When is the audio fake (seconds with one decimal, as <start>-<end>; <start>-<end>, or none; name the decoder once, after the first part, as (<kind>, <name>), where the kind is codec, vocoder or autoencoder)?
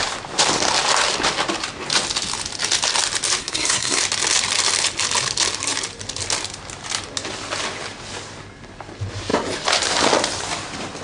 3.4-4.0 (codec, SNAC)